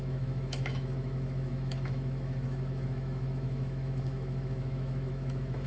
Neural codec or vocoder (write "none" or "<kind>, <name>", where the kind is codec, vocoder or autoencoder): autoencoder, DAC-VAE